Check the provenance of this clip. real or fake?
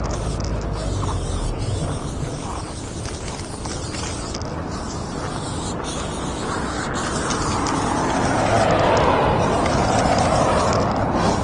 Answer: real